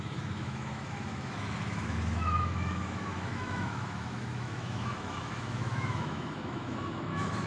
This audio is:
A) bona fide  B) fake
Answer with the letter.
B